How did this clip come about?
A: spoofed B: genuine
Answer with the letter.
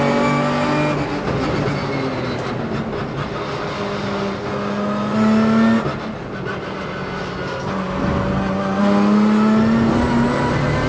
B